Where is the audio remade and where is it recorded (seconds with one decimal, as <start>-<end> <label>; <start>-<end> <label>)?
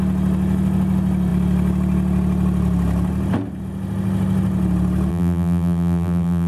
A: 0.0-5.1 recorded; 5.1-6.5 remade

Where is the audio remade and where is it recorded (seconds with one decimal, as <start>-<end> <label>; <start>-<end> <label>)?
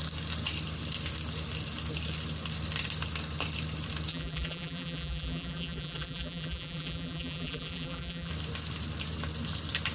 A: 0.0-4.1 recorded; 4.1-8.3 remade; 8.3-9.9 recorded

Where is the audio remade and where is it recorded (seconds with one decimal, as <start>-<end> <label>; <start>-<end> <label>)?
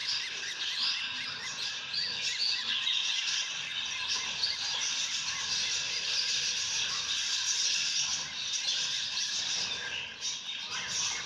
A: 0.0-4.7 recorded; 4.7-6.3 remade; 6.3-8.1 recorded; 8.1-8.7 remade; 8.7-11.3 recorded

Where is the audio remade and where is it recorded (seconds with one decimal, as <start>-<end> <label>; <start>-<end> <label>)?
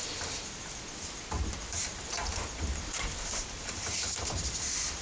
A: 0.0-0.8 remade; 0.8-1.9 recorded; 1.9-5.0 remade